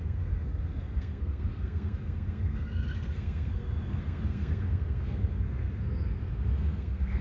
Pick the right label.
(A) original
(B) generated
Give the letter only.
B